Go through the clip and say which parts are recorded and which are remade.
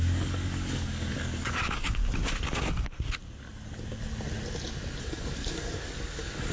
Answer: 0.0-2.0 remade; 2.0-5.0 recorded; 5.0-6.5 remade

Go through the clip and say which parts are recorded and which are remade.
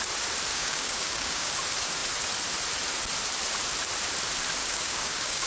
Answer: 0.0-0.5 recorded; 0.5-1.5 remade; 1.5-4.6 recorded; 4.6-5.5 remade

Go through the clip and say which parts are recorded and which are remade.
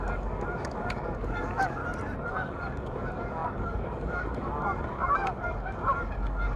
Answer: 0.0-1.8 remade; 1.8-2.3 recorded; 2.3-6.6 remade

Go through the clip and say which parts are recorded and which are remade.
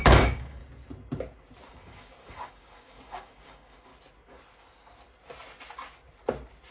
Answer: 0.0-0.6 remade; 0.6-1.7 recorded; 1.7-3.9 remade; 3.9-6.7 recorded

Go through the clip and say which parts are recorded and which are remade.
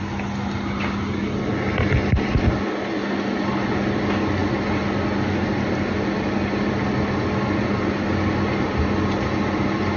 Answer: 0.0-10.0 recorded